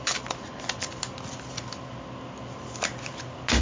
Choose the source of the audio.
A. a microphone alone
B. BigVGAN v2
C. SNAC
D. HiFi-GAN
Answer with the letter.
A